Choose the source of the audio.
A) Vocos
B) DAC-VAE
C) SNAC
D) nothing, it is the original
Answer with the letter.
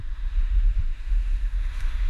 B